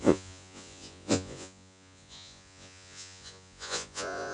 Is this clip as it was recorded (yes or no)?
no